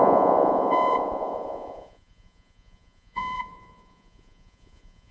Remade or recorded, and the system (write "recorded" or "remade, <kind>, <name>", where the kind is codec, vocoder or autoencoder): remade, vocoder, Vocos